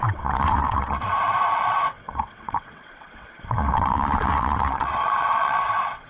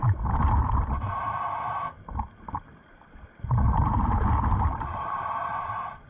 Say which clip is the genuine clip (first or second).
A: second